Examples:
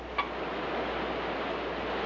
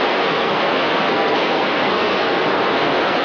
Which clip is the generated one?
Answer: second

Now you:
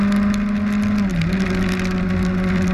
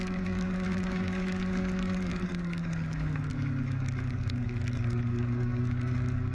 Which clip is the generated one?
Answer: second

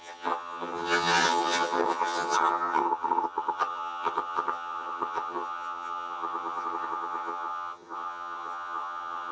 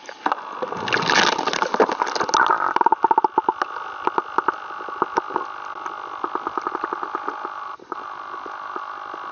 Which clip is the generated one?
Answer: first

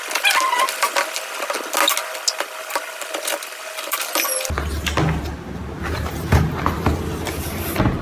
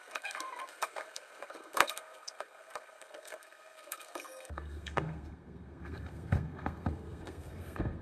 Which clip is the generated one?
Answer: second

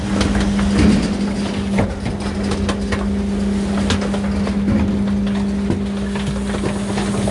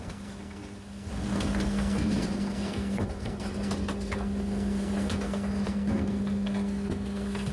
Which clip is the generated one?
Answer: second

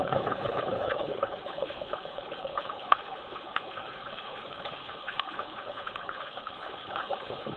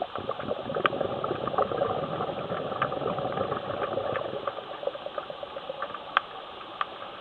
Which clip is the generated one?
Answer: first